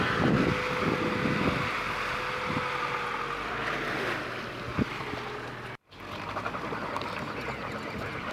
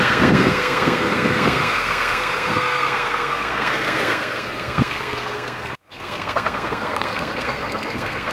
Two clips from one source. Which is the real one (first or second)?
first